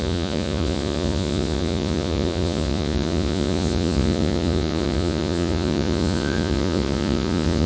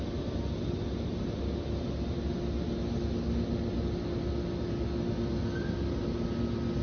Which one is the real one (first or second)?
second